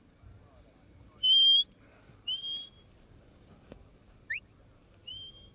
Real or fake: real